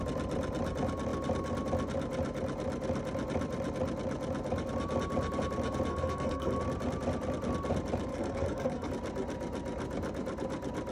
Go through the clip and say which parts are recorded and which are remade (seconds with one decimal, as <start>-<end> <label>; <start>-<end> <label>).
0.0-5.9 recorded; 5.9-6.6 remade; 6.6-8.1 recorded; 8.1-8.9 remade; 8.9-10.9 recorded